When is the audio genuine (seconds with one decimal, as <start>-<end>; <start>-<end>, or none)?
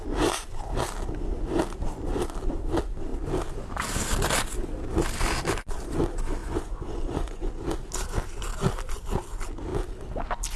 0.0-6.4; 7.5-10.6